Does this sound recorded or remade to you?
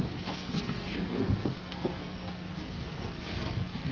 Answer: remade